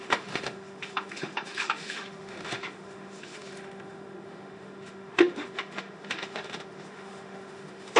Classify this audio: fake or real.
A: fake